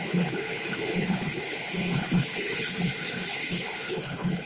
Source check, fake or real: fake